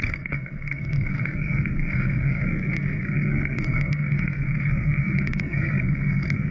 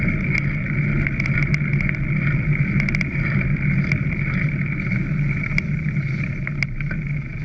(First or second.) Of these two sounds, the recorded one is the second